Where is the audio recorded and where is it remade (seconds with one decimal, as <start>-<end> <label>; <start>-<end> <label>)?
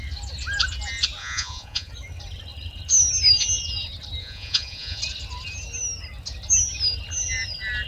0.0-1.2 recorded; 1.2-1.9 remade; 1.9-4.2 recorded; 4.2-5.0 remade; 5.0-7.9 recorded